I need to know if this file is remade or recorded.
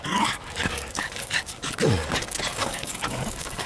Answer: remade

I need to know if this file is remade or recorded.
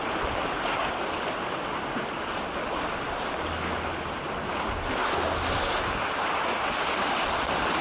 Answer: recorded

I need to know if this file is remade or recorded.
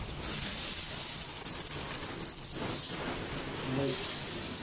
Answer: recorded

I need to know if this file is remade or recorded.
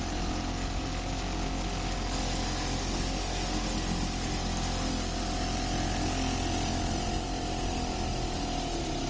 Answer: recorded